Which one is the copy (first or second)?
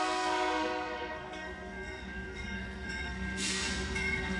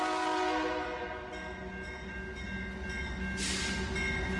first